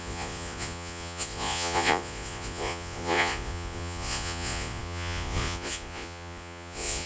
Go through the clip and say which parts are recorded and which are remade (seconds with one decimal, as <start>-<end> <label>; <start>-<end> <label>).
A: 0.0-7.1 remade